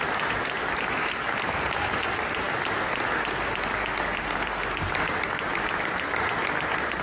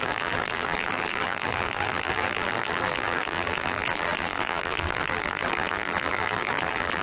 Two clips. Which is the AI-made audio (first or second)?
second